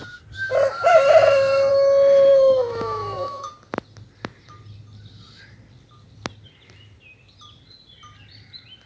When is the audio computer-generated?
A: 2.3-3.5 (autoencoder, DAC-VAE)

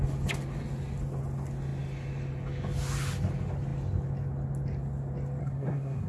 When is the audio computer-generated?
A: 5.4-6.1 (codec, SNAC)

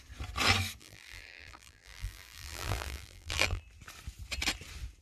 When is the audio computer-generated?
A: 0.8-3.6 (vocoder, BigVGAN v2)

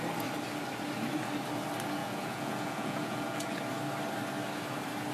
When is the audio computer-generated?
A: 2.0-3.6 (vocoder, Vocos)

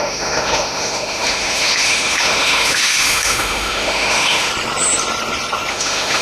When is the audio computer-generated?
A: 0.0-4.5 (autoencoder, DAC-VAE); 5.7-6.2

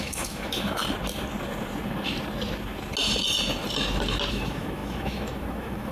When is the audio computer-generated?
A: 0.0-0.8 (autoencoder, DAC-VAE); 4.3-5.9